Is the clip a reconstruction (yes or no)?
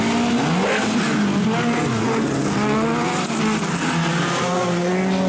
no